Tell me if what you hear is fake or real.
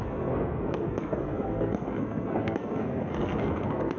fake